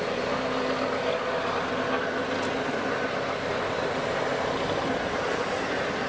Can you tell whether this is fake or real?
real